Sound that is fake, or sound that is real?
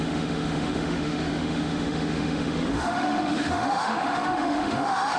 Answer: fake